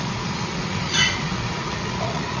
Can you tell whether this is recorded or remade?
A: remade